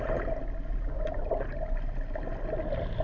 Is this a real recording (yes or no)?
yes